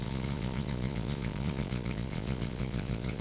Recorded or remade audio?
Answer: remade